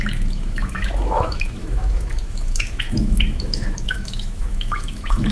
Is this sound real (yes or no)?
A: no